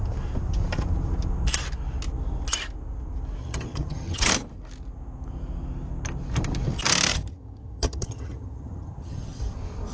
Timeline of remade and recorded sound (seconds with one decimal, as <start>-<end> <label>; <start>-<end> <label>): 0.0-3.4 recorded; 3.4-4.3 remade; 4.3-7.1 recorded; 7.1-9.4 remade; 9.4-9.9 recorded